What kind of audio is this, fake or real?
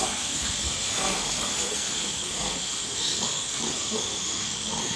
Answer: fake